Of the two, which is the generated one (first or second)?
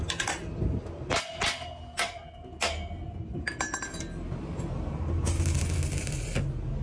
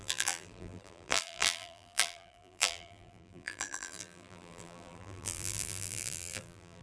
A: second